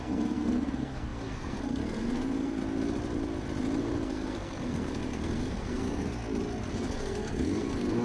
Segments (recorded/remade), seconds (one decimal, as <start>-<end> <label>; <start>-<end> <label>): 0.0-2.6 remade; 2.6-3.8 recorded; 3.8-6.2 remade; 6.2-6.7 recorded; 6.7-8.0 remade